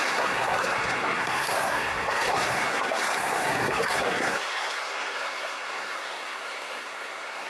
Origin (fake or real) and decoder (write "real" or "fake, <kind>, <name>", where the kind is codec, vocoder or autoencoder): fake, codec, SNAC